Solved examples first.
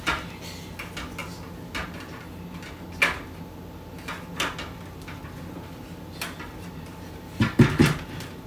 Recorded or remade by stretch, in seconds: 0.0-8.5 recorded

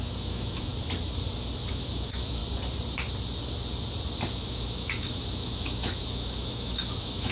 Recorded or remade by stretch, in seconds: 0.0-0.7 remade; 0.7-1.7 recorded; 1.7-2.4 remade; 2.4-4.3 recorded; 4.3-7.3 remade

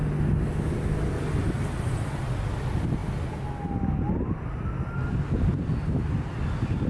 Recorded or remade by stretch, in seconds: 0.0-6.9 recorded

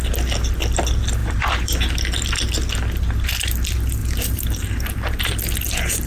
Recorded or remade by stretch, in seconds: 0.0-1.2 recorded; 1.2-1.9 remade; 1.9-4.0 recorded; 4.0-5.1 remade; 5.1-6.1 recorded

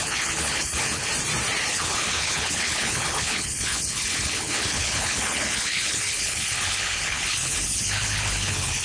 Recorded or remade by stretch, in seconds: 0.0-1.1 remade; 1.1-1.7 recorded; 1.7-8.8 remade

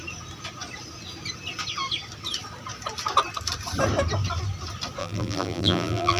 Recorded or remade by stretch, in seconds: 0.0-5.0 recorded; 5.0-6.2 remade